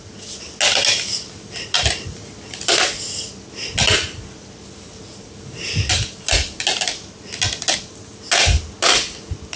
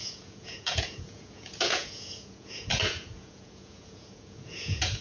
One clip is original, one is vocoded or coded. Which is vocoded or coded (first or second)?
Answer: second